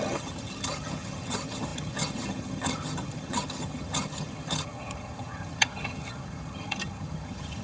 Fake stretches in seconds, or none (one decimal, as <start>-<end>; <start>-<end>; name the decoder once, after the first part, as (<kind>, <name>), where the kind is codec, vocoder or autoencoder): 0.0-7.6 (vocoder, HiFi-GAN)